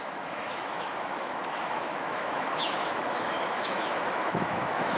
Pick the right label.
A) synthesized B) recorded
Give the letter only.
A